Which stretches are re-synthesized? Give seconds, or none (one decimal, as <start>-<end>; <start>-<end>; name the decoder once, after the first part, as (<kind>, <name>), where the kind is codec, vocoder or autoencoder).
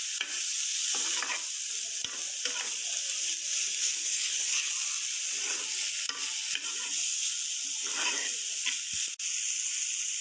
3.8-4.7 (codec, HILCodec)